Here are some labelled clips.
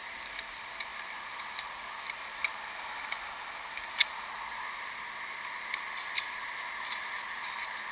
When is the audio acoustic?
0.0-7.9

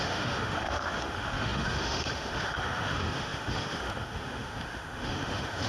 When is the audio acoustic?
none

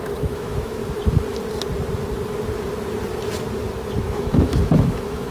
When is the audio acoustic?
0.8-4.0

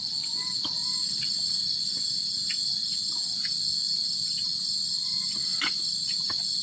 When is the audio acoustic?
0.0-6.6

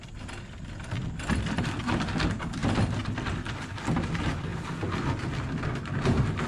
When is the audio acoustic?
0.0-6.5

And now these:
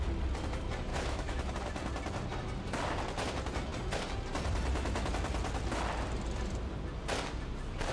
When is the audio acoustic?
0.0-0.9; 1.5-7.9

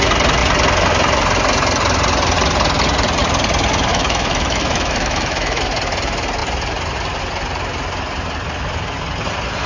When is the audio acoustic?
0.0-3.9; 5.6-9.7